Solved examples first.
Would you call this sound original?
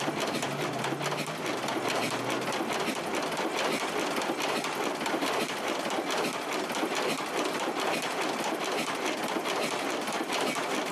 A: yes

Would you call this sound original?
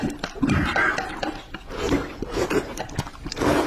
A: yes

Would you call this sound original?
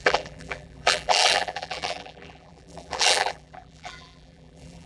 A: no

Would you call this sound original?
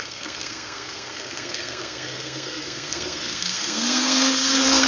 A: no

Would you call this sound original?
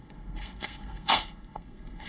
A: no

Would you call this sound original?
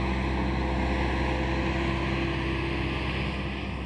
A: yes